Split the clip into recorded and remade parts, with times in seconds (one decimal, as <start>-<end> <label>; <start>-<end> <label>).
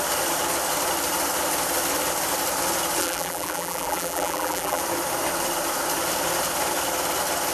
0.0-3.0 recorded; 3.0-4.8 remade; 4.8-7.5 recorded